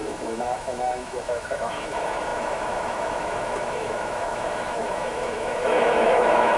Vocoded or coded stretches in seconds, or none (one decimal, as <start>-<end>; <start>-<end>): 0.0-6.6